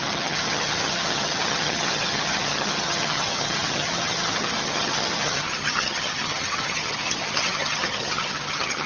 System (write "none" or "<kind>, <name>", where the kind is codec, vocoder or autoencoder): vocoder, HiFi-GAN